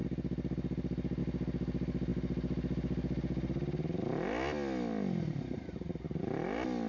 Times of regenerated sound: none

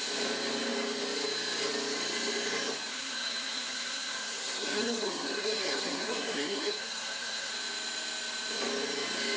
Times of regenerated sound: 2.9-7.5 (codec, SNAC)

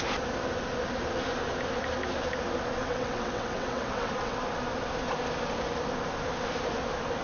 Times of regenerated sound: 2.8-4.4 (vocoder, WaveNeXt)

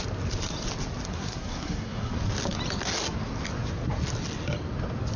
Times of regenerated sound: 1.1-2.1 (codec, SNAC)

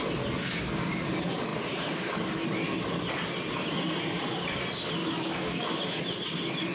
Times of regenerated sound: 5.0-6.0 (autoencoder, DAC-VAE)